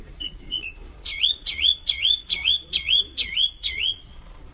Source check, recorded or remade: remade